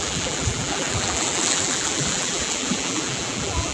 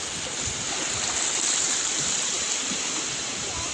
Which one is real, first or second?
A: second